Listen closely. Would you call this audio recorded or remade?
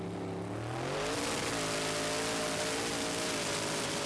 recorded